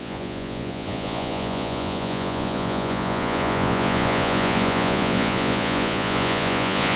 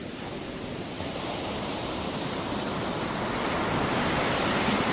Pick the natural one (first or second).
second